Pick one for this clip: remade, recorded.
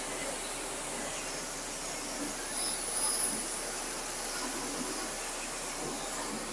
recorded